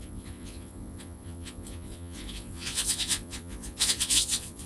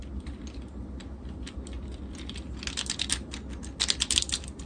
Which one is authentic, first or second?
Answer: second